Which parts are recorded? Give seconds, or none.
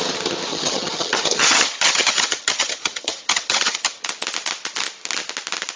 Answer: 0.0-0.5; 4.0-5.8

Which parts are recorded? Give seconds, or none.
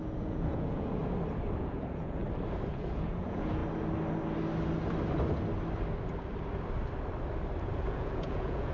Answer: 1.0-1.6; 2.2-2.7; 3.6-7.8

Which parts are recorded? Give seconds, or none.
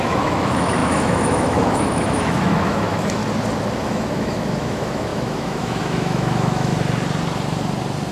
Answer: 3.2-3.8; 6.7-8.1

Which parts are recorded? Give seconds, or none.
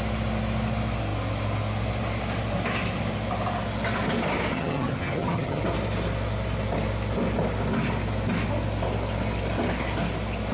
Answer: 0.0-4.5; 5.6-10.5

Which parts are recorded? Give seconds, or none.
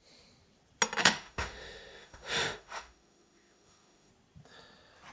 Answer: 0.0-1.0; 4.1-5.1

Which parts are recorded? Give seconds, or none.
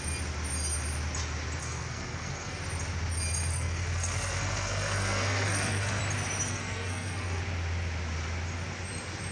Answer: 0.0-1.6; 2.6-3.5; 6.0-6.5; 7.4-9.3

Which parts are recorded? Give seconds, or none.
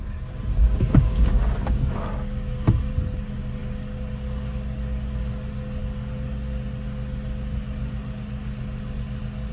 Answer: 0.0-0.6; 2.1-9.5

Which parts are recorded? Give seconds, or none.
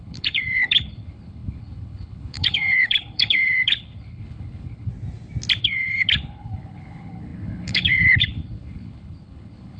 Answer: 4.9-5.6